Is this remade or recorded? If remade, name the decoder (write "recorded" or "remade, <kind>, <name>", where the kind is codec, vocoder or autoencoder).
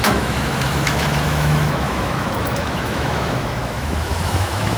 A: remade, autoencoder, DAC-VAE